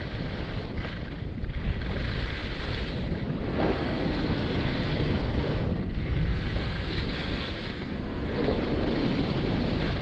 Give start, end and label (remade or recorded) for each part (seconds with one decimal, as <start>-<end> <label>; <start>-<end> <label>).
0.0-3.5 recorded; 3.5-8.6 remade; 8.6-10.0 recorded